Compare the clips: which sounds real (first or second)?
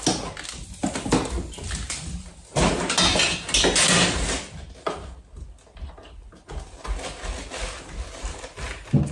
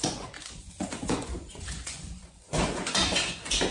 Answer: first